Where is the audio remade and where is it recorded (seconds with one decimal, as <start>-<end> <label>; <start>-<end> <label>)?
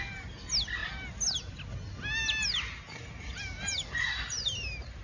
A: 0.0-5.0 recorded